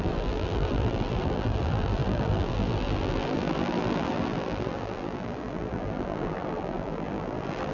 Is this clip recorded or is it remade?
remade